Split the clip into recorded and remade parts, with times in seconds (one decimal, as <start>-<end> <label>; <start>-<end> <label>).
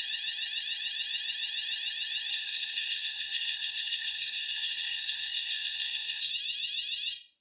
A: 0.0-2.3 recorded; 2.3-6.3 remade; 6.3-7.4 recorded